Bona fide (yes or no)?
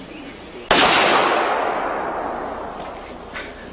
yes